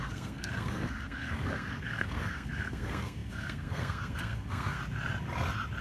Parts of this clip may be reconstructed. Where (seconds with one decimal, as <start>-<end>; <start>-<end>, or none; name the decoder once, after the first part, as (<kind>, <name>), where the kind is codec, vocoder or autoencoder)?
0.0-4.8 (codec, SNAC)